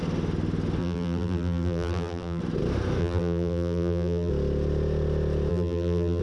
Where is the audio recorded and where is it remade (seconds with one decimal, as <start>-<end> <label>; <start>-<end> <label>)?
0.0-0.8 recorded; 0.8-2.4 remade; 2.4-3.0 recorded; 3.0-4.3 remade; 4.3-5.5 recorded; 5.5-6.2 remade